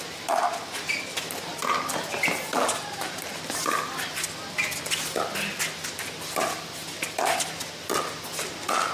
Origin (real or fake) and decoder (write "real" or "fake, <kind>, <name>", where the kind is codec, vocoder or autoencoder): real